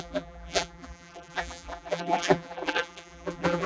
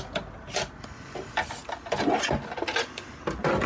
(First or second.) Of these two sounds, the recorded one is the second